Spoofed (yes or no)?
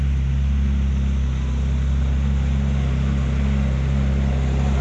no